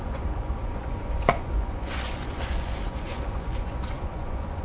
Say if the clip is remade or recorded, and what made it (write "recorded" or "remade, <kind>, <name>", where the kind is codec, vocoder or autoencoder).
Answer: remade, vocoder, Vocos